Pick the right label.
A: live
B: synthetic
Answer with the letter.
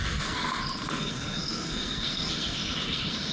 B